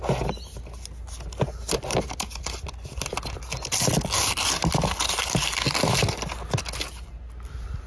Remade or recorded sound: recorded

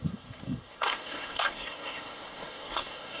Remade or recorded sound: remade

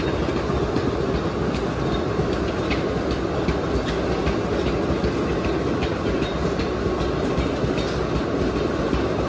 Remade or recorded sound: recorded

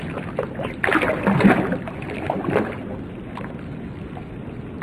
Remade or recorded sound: recorded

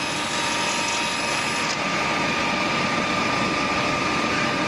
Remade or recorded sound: recorded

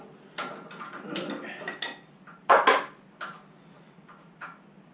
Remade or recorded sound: recorded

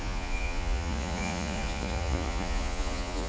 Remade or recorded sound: remade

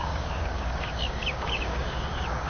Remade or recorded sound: remade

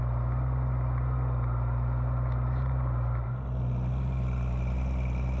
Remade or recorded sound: recorded